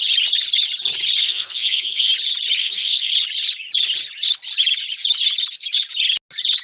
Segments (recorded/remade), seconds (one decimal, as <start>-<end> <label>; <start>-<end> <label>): 0.0-1.2 recorded; 1.2-2.1 remade; 2.1-2.6 recorded; 2.6-3.1 remade; 3.1-6.6 recorded